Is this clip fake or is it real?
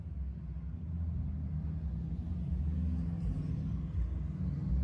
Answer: real